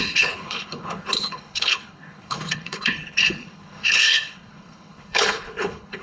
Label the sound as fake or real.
fake